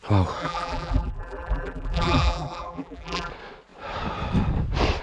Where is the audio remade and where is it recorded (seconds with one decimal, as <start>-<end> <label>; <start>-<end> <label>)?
0.0-0.4 recorded; 0.4-3.3 remade; 3.3-5.0 recorded